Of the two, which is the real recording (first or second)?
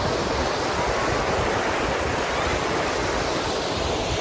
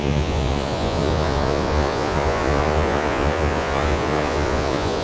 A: first